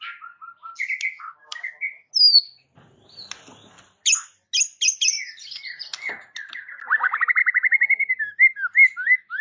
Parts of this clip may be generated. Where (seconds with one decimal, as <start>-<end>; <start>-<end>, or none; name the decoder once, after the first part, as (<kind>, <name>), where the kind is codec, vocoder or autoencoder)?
1.4-2.1 (codec, DAC)